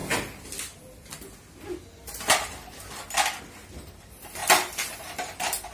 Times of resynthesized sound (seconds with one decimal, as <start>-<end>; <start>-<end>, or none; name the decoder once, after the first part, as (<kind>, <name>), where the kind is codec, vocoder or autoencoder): 4.4-5.7 (vocoder, BigVGAN v2)